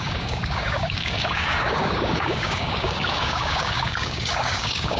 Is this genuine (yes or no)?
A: no